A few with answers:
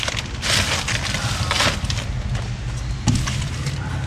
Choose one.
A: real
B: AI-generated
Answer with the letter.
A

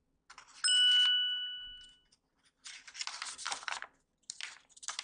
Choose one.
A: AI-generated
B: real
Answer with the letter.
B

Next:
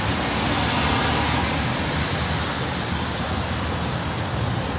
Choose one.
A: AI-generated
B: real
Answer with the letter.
B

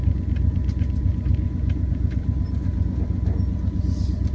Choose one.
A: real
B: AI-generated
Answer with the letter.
A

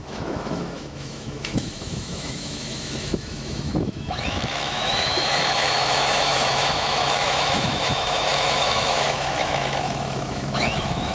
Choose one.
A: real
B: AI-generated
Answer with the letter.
B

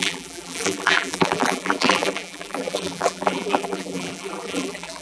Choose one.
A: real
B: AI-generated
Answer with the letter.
B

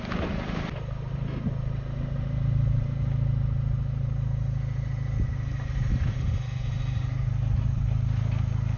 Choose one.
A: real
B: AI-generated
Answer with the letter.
A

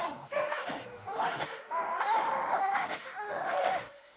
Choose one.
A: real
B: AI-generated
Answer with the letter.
B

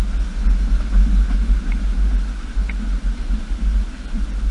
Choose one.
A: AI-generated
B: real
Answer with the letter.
B